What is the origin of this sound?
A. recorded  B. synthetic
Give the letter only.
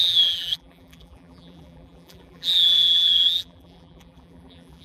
B